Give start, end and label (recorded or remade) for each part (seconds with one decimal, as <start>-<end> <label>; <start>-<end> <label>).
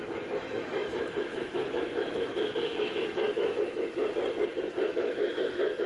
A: 0.0-4.0 remade; 4.0-4.8 recorded; 4.8-5.9 remade